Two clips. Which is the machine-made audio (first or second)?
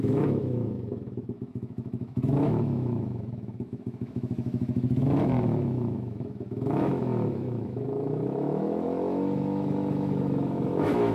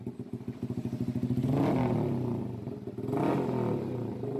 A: first